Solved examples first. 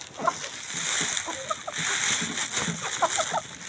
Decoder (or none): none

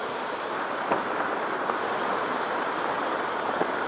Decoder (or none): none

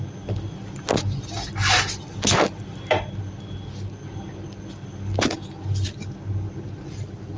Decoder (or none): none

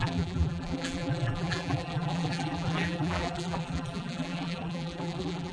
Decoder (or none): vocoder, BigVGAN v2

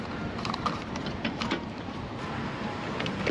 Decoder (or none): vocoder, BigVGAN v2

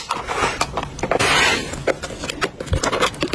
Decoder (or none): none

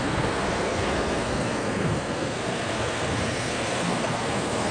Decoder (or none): codec, SNAC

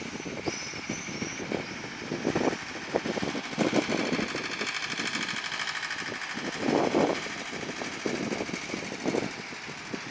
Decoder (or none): none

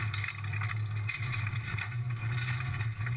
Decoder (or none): none